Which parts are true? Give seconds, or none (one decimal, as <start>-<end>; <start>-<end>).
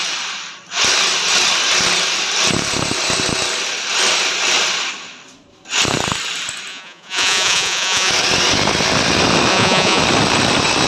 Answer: 0.0-6.7; 8.1-9.5; 10.0-10.9